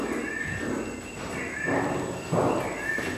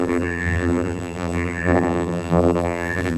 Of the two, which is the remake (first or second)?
second